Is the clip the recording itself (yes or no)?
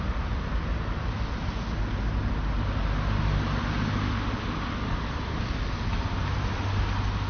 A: yes